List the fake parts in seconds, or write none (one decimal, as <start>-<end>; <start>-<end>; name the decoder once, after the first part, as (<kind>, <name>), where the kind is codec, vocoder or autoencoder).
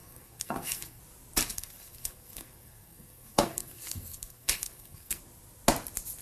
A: 0.0-1.0 (codec, SNAC); 1.5-5.2